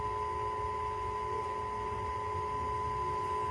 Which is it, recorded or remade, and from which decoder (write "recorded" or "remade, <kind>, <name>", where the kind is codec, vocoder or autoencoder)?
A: recorded